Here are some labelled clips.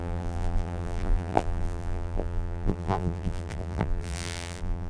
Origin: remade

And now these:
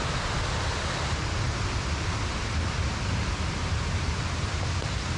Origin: recorded